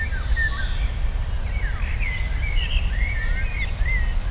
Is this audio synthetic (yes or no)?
no